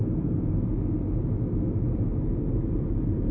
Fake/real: real